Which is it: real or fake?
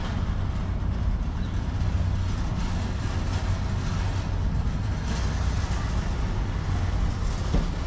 real